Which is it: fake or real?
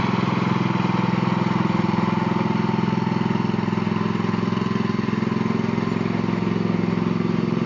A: real